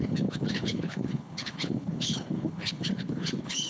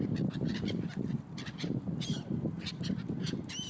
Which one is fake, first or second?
first